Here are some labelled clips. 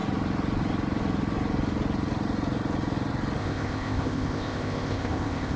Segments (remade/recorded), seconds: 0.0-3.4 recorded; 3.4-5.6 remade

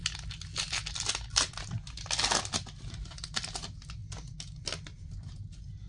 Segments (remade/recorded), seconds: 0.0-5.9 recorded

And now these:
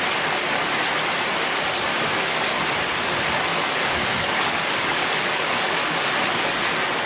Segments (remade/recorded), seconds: 0.0-1.9 recorded; 1.9-2.6 remade; 2.6-3.5 recorded; 3.5-6.1 remade; 6.1-7.1 recorded

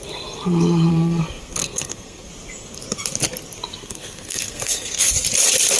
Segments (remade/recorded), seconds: 0.0-0.9 recorded; 0.9-2.3 remade; 2.3-3.8 recorded; 3.8-5.1 remade; 5.1-5.8 recorded

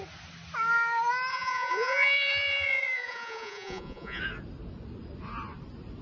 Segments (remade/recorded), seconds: 0.0-1.3 recorded; 1.3-4.2 remade; 4.2-6.0 recorded